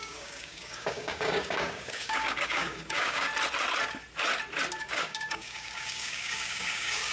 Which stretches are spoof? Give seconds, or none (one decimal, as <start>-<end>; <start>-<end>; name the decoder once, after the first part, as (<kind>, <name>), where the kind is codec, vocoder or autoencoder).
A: 0.0-3.3 (codec, DAC); 4.8-7.1